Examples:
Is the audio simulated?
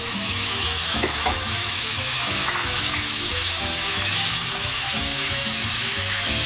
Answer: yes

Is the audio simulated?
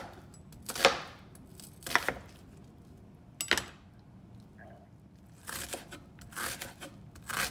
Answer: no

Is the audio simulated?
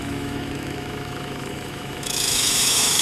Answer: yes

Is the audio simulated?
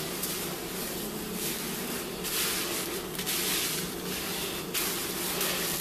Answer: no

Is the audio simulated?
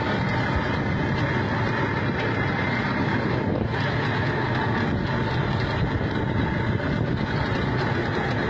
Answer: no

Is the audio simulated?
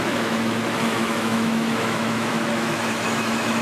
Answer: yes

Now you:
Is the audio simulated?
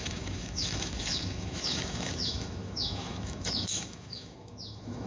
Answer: yes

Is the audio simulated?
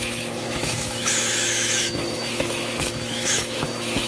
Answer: yes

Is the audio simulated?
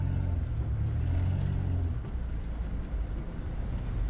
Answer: no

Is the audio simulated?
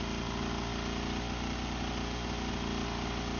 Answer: no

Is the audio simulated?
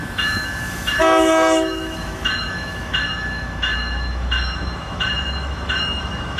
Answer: yes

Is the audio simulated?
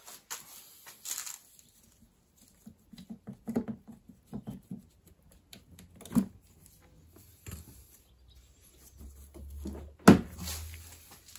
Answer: no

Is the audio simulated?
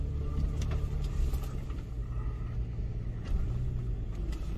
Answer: no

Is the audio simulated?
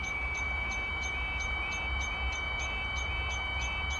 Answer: no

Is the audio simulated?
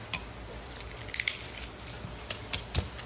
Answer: no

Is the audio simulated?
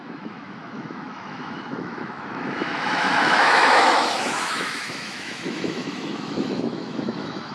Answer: yes